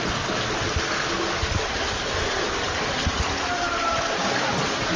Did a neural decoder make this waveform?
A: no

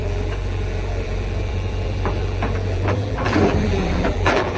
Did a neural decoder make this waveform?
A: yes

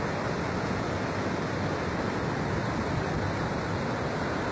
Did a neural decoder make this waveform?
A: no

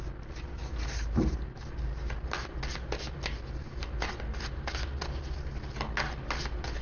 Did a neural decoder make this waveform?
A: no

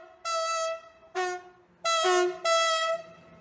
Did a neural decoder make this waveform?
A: no